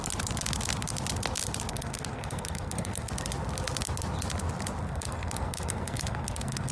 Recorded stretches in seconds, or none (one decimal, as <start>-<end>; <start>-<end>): 0.0-1.7; 3.1-4.8